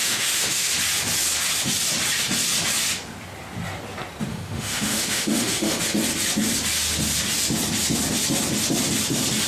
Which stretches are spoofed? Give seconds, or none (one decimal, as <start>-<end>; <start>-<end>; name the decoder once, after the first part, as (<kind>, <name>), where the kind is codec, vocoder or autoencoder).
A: 0.0-0.7 (autoencoder, DAC-VAE); 4.3-5.8